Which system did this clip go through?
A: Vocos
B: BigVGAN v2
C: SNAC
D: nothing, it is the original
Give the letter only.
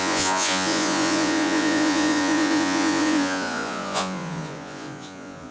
A